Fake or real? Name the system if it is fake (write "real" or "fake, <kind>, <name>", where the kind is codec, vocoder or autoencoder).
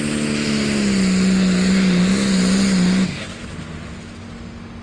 real